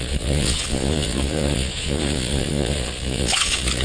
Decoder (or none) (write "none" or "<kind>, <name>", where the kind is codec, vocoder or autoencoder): vocoder, Vocos